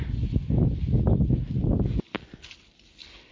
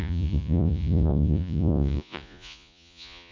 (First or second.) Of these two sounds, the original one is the first